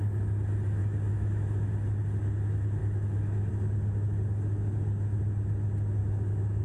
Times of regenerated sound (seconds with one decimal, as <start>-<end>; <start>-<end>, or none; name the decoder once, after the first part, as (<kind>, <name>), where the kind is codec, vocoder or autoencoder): 0.8-1.7 (autoencoder, DAC-VAE); 2.8-3.5; 6.0-6.6